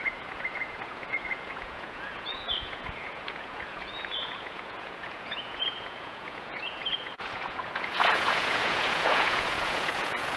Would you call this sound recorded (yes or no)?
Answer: no